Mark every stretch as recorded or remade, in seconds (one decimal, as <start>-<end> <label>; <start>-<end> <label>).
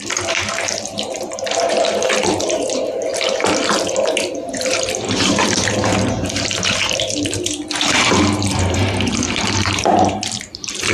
0.0-10.9 remade